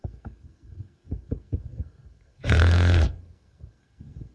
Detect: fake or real fake